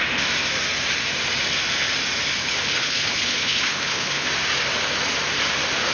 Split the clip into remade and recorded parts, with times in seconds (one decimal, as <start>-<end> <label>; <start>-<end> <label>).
0.0-2.4 recorded; 2.4-4.3 remade; 4.3-5.9 recorded